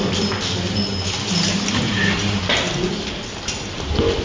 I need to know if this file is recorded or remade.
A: recorded